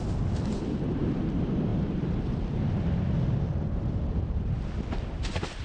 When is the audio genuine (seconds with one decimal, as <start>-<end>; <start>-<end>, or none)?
none